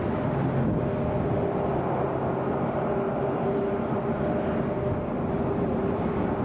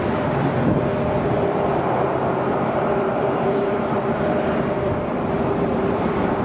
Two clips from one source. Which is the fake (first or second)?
second